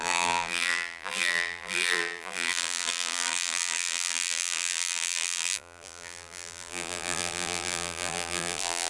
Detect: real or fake fake